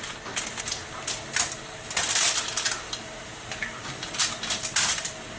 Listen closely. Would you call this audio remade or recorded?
recorded